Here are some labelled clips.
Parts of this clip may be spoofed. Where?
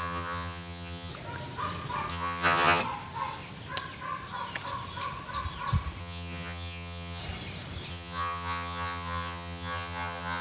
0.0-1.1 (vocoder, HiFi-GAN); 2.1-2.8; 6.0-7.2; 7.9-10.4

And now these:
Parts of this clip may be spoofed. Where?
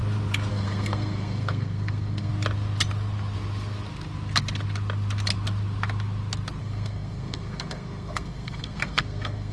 0.5-2.3 (codec, SNAC); 6.6-9.5